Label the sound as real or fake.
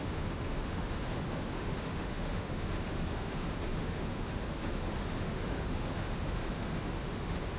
fake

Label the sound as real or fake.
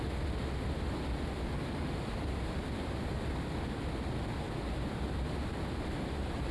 real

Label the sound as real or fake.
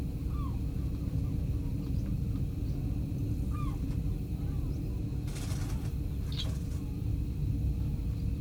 real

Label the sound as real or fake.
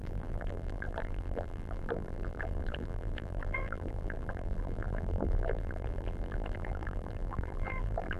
fake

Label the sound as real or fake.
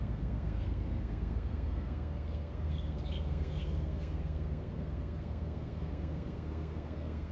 fake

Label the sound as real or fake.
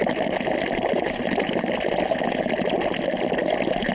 real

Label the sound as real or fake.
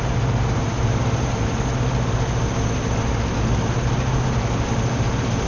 real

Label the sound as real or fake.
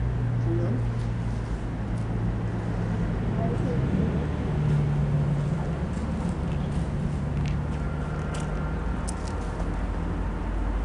real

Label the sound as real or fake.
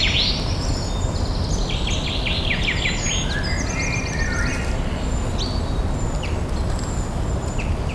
real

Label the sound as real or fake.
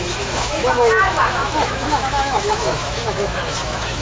fake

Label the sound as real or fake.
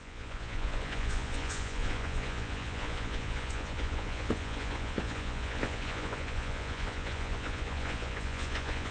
fake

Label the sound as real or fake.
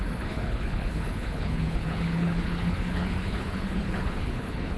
fake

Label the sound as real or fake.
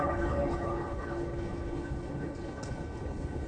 fake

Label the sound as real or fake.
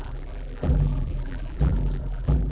fake